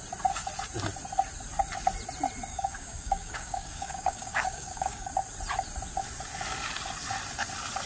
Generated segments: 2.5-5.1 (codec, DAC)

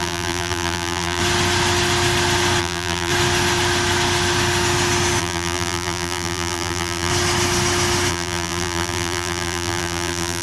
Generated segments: 0.0-1.2 (vocoder, BigVGAN v2); 2.6-3.1; 5.2-7.1; 8.1-10.4

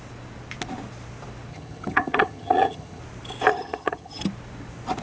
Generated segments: 1.5-3.0 (vocoder, HiFi-GAN); 3.5-4.2

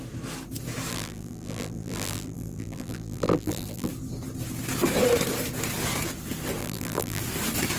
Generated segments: 0.9-3.9 (vocoder, BigVGAN v2); 6.6-7.2

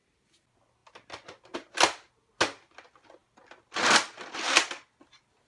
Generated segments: none